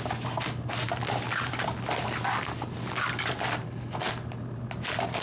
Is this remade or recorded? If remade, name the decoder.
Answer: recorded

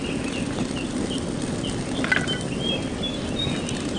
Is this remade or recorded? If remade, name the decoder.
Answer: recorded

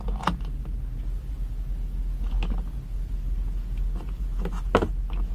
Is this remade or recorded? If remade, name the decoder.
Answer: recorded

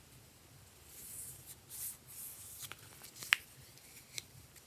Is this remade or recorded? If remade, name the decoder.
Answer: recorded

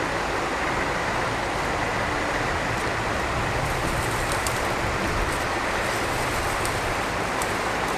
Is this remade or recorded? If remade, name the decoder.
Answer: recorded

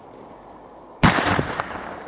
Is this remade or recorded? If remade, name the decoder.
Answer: remade, vocoder, BigVGAN v2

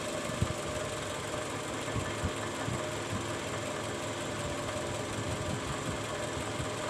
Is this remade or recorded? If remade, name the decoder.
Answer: recorded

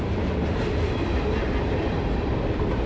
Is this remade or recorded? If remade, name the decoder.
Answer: remade, vocoder, BigVGAN v2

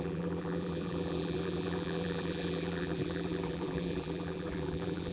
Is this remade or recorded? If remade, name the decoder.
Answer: remade, vocoder, BigVGAN v2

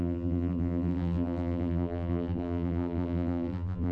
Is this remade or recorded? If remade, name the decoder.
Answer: remade, vocoder, BigVGAN v2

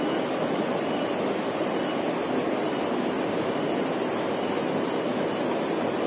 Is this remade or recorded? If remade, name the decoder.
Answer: recorded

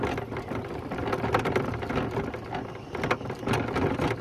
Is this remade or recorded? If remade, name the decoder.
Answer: recorded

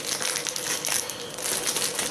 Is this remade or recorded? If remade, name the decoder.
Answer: recorded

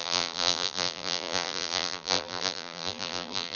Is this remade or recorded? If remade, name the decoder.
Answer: remade, vocoder, BigVGAN v2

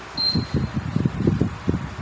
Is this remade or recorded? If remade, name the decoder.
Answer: recorded